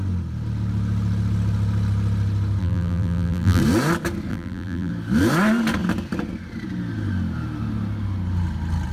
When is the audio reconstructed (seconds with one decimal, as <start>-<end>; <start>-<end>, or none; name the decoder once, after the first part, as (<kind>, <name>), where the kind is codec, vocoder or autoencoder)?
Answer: 2.6-3.6 (vocoder, BigVGAN v2); 4.3-4.9